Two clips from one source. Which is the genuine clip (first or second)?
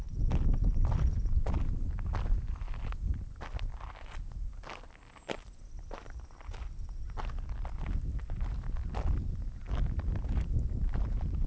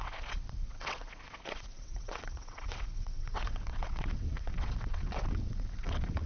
first